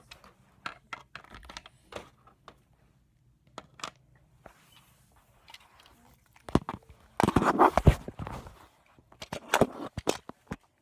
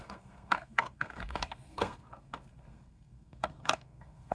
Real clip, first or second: first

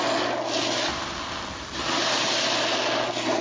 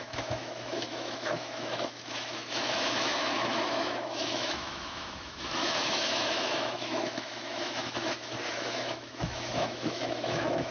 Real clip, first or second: first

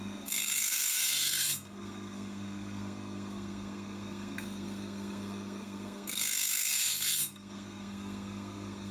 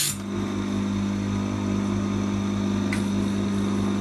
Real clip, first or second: second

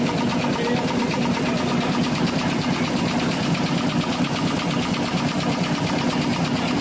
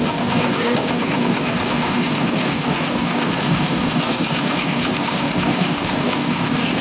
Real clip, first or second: first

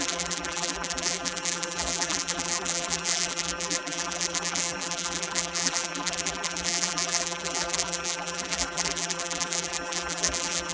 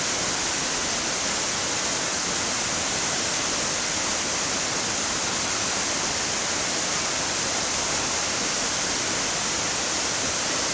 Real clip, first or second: second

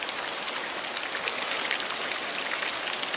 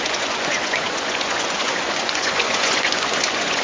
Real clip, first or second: first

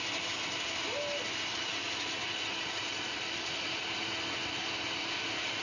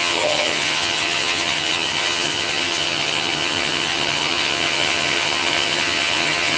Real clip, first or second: first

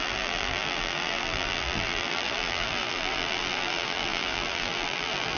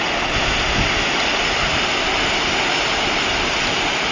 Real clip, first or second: second